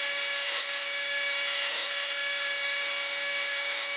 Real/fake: fake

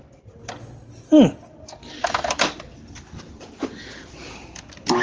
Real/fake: real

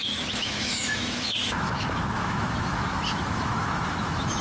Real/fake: fake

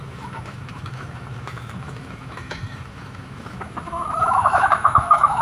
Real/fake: fake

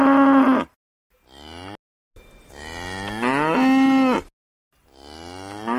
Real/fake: real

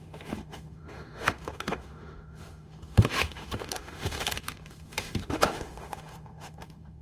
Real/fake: fake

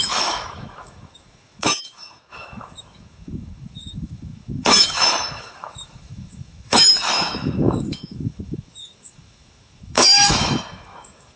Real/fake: fake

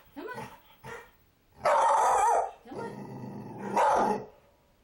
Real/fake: real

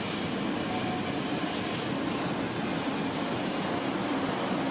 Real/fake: real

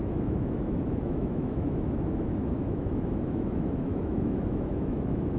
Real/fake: fake